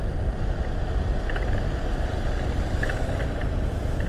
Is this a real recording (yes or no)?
yes